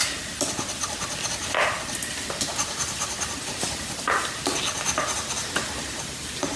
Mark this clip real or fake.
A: real